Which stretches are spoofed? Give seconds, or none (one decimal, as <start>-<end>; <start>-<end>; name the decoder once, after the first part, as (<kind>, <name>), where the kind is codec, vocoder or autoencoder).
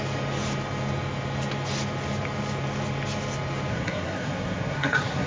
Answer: 3.7-5.3 (codec, SNAC)